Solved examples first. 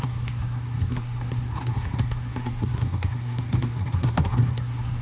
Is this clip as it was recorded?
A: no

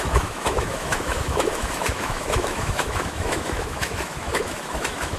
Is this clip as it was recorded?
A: no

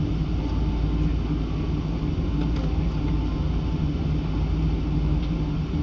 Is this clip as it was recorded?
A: yes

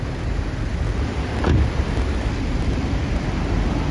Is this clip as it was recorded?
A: yes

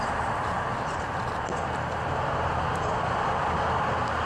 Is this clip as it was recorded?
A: yes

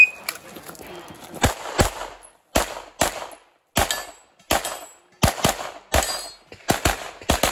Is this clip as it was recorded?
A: yes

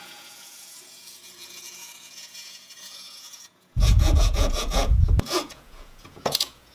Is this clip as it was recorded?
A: no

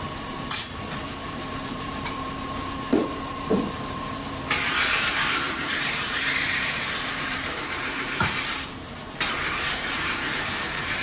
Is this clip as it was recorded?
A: no